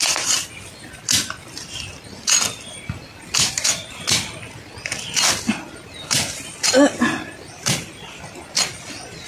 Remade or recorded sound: recorded